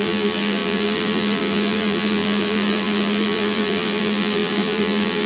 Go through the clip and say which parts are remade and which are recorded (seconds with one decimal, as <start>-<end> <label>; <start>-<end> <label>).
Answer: 0.0-5.3 remade